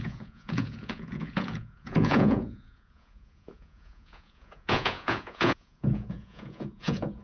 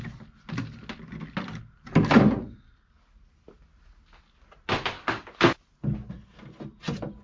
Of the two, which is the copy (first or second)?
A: first